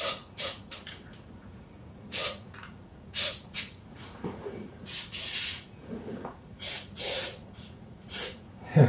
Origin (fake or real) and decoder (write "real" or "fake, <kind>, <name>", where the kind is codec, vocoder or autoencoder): fake, vocoder, Vocos